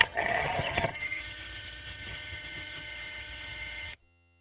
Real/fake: fake